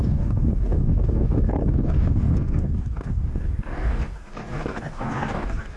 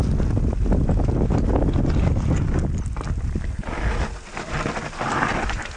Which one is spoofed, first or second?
first